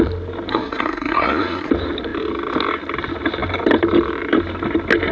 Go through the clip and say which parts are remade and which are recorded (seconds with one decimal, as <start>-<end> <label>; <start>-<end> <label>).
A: 0.0-0.5 recorded; 0.5-1.7 remade; 1.7-5.1 recorded